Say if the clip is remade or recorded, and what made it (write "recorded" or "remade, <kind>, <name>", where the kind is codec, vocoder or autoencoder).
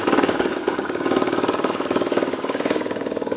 remade, codec, DAC